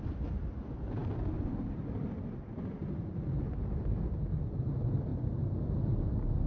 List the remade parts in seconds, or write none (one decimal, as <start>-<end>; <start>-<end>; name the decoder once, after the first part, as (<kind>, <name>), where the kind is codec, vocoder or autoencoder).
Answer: none